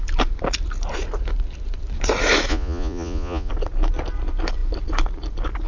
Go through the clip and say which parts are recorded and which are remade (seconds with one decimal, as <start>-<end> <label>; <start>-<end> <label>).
0.0-2.5 recorded; 2.5-3.5 remade; 3.5-5.7 recorded